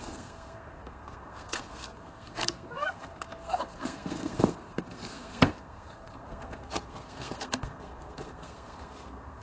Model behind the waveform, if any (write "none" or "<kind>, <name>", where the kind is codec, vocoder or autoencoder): codec, SNAC